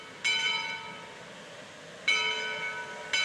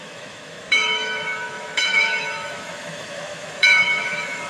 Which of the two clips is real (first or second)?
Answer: first